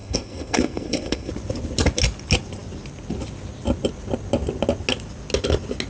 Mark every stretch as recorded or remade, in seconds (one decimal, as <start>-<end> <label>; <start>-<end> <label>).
0.0-1.3 remade; 1.3-5.9 recorded

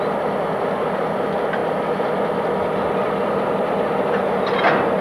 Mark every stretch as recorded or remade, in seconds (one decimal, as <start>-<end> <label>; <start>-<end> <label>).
0.0-5.0 recorded